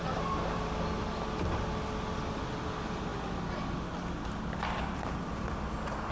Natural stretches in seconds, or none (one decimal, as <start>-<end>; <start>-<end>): 0.0-6.1

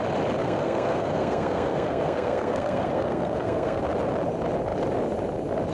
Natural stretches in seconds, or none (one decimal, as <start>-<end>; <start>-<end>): 0.0-0.4; 3.8-5.7

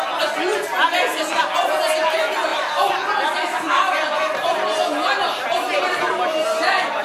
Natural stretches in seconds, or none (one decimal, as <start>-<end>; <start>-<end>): 0.0-7.0